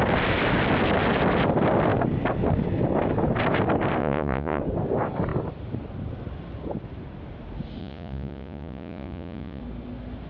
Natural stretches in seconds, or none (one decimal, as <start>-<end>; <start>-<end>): 0.0-4.0; 4.6-7.8; 9.6-10.3